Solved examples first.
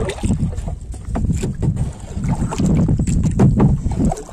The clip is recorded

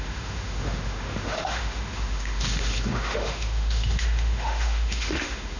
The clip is remade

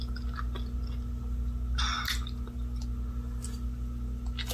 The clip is recorded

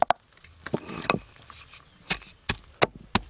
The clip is recorded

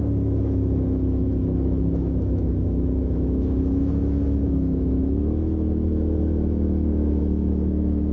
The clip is remade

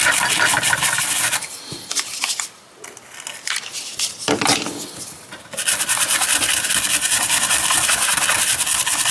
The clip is recorded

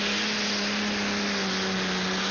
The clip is recorded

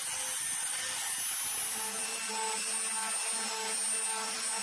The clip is recorded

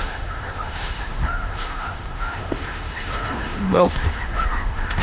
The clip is remade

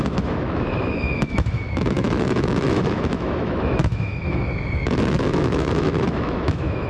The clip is remade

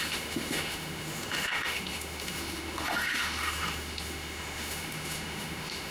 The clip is remade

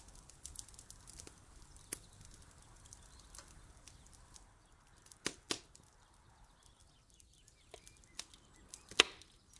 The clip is recorded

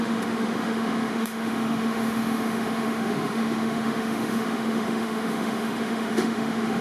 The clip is remade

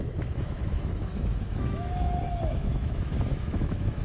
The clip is remade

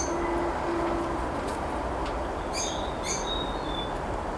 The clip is recorded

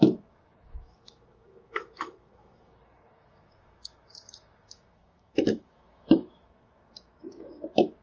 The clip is remade